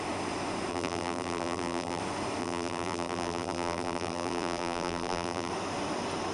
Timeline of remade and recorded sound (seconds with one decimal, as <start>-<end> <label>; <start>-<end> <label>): 0.0-0.7 recorded; 0.7-2.0 remade; 2.0-2.4 recorded; 2.4-5.5 remade; 5.5-6.3 recorded